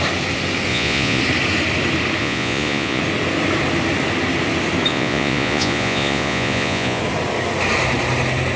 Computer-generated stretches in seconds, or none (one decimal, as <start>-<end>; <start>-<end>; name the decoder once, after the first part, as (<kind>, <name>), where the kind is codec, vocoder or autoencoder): 0.7-1.2 (vocoder, Vocos); 2.2-3.0; 4.9-7.0